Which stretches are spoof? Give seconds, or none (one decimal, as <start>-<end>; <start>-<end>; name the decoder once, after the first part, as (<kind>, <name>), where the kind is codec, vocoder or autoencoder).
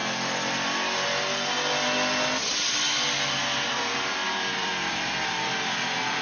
3.7-6.2 (vocoder, BigVGAN v2)